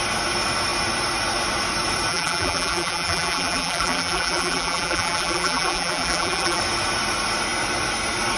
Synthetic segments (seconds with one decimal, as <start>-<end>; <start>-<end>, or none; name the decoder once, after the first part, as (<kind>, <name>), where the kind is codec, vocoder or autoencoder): 2.1-6.6 (vocoder, BigVGAN v2)